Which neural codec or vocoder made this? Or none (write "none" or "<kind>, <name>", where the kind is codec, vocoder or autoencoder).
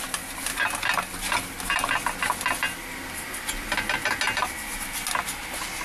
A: none